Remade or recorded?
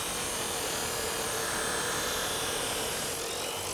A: recorded